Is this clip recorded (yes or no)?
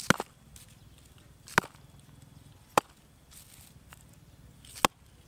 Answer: yes